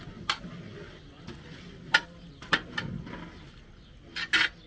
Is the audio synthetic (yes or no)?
no